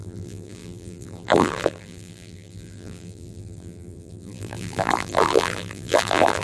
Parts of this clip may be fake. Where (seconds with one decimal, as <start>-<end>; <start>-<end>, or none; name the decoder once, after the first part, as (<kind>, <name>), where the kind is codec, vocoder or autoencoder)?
0.0-6.4 (vocoder, BigVGAN v2)